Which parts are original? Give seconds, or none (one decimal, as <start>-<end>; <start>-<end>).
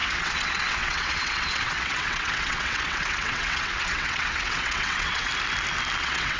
5.3-6.0